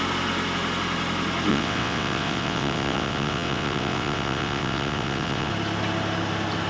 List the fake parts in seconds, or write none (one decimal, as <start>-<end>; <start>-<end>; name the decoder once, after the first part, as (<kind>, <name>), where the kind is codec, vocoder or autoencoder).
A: 1.5-5.5 (vocoder, WaveNeXt)